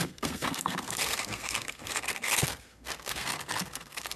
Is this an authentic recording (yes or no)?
no